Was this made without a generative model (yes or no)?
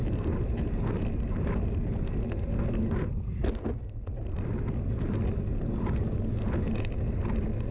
yes